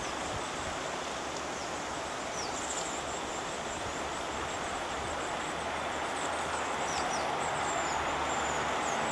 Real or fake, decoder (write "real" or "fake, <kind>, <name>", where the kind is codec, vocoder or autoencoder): real